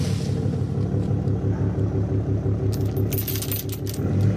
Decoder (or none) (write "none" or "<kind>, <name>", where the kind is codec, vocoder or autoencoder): none